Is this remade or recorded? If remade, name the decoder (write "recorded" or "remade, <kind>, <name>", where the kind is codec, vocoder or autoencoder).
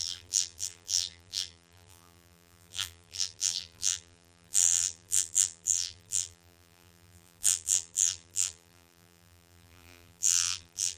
remade, vocoder, BigVGAN v2